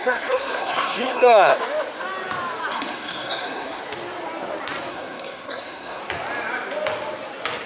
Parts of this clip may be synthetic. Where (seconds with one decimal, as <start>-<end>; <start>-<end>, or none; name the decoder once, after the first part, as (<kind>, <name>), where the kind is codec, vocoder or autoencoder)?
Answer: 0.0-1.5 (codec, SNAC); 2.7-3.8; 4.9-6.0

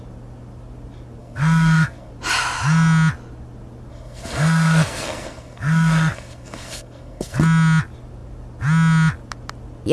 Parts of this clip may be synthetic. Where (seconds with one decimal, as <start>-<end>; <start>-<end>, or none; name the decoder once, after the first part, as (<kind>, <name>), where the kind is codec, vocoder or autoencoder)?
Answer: 1.2-2.1 (codec, SNAC); 3.9-7.4

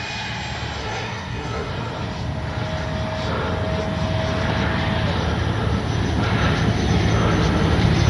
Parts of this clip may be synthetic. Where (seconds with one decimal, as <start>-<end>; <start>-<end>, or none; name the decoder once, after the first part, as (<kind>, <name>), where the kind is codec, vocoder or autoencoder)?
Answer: 0.8-1.7 (codec, SNAC)